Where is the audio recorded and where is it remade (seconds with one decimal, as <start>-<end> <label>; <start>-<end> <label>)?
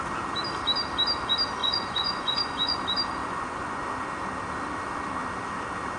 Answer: 0.0-1.6 recorded; 1.6-2.8 remade; 2.8-3.2 recorded; 3.2-3.8 remade; 3.8-6.0 recorded